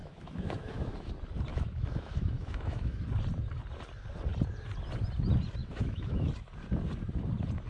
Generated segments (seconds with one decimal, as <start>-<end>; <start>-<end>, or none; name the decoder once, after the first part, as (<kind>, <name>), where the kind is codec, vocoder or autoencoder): 0.0-1.1 (autoencoder, DAC-VAE); 1.5-3.0; 5.6-6.3